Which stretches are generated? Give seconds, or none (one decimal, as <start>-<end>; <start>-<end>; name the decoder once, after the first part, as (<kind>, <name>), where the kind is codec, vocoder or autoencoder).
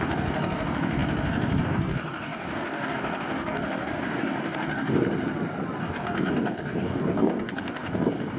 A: 0.0-5.0 (codec, DAC); 5.8-8.4